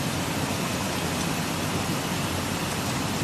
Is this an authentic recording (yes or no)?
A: yes